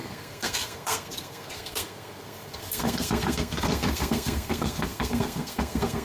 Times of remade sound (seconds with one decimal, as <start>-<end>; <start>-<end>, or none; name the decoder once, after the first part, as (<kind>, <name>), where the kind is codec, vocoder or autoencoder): 0.0-6.0 (codec, SNAC)